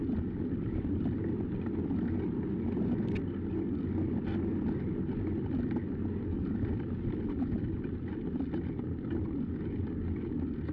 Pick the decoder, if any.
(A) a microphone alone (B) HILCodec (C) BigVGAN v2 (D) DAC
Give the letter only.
A